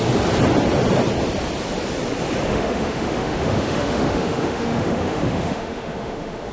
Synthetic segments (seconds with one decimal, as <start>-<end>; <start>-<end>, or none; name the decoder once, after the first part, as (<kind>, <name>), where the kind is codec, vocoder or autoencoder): 2.5-6.5 (autoencoder, DAC-VAE)